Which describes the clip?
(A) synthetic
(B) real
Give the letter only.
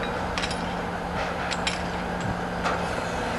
B